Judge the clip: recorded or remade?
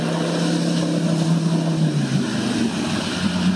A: recorded